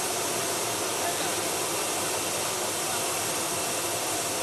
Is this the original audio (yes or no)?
yes